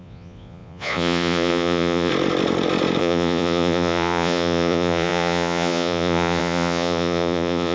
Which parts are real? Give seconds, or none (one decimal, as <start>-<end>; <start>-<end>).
2.1-3.0